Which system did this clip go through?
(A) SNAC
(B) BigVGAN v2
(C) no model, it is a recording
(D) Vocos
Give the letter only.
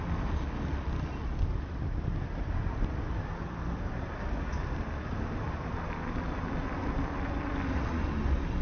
C